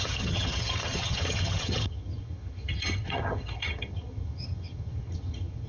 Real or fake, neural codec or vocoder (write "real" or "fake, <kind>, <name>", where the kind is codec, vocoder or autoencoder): fake, vocoder, HiFi-GAN